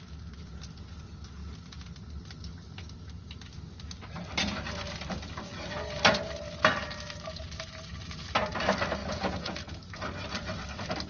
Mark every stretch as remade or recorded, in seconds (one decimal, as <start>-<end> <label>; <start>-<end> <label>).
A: 0.0-9.0 recorded; 9.0-9.8 remade; 9.8-11.1 recorded